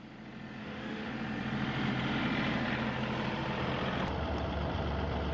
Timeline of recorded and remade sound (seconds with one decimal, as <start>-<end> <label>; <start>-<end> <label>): 0.0-0.6 recorded; 0.6-1.1 remade; 1.1-5.3 recorded